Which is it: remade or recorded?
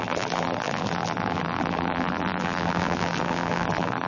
remade